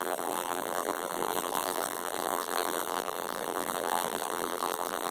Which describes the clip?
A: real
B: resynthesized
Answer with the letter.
B